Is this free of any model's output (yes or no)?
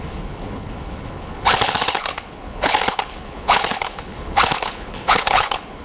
no